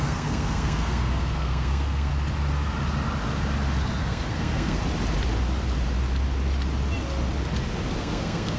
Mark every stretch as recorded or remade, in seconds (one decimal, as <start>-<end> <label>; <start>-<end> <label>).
0.0-2.1 remade; 2.1-4.0 recorded; 4.0-4.8 remade; 4.8-8.0 recorded; 8.0-8.6 remade